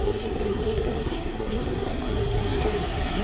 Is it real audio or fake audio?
fake